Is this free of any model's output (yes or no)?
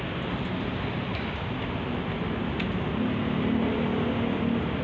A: yes